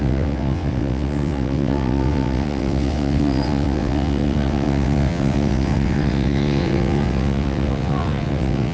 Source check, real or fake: fake